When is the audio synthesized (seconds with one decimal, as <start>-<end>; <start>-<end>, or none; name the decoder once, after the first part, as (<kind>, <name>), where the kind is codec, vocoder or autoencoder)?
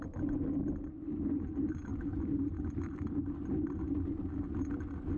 none